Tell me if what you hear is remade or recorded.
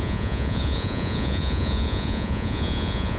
remade